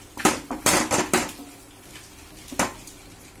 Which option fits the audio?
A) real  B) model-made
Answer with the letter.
A